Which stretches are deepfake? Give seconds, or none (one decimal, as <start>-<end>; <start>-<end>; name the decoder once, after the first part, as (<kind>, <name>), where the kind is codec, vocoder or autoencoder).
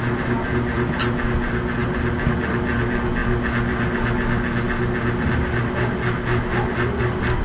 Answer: none